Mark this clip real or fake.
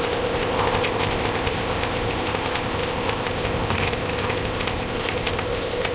fake